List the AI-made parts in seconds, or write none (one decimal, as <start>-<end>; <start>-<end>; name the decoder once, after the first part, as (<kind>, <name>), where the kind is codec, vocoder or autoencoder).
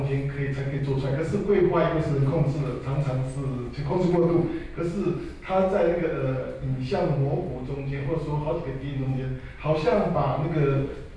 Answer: none